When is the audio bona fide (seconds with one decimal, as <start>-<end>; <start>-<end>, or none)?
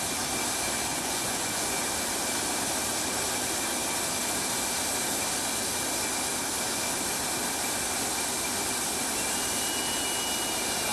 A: 0.0-0.9; 1.8-10.9